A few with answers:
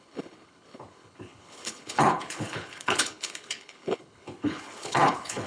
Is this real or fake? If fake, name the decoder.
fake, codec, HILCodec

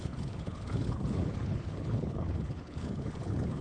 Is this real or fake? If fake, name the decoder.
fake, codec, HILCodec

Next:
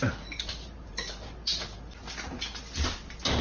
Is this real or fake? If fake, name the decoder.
real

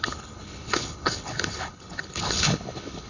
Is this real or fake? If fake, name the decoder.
fake, codec, HILCodec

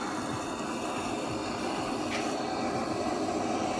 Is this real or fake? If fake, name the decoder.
real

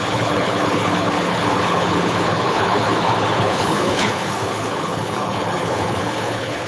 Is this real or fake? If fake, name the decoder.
fake, codec, HILCodec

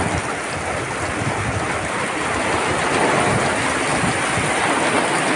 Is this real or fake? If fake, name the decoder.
real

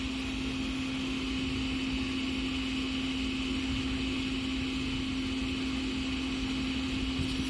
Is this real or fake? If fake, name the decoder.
real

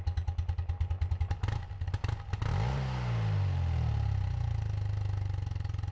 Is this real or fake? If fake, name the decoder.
real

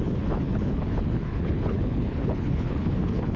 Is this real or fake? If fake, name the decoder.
fake, codec, HILCodec